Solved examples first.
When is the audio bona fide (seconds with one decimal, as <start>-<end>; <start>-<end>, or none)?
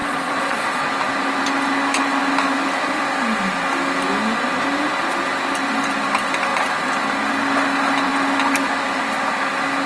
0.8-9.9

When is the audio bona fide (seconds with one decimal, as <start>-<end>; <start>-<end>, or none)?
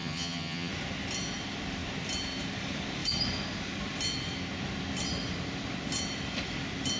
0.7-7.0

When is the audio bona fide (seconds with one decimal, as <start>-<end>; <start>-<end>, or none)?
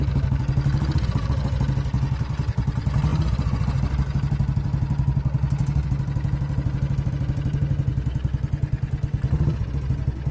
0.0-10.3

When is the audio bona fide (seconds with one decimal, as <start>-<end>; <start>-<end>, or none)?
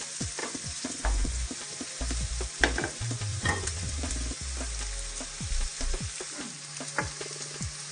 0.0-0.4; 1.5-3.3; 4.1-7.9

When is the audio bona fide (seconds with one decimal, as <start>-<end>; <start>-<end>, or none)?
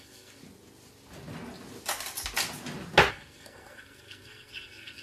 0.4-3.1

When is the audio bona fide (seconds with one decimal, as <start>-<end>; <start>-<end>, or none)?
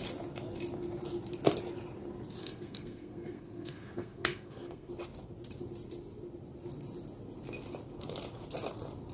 0.0-2.4; 4.9-9.1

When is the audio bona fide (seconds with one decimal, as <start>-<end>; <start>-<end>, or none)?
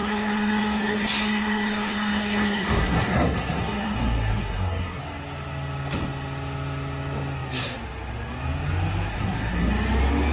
5.0-9.1; 9.7-10.3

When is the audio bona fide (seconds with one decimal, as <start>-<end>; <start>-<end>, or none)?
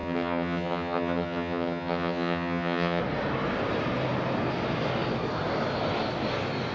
3.0-6.7